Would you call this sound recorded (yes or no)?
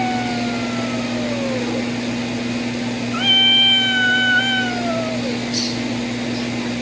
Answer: yes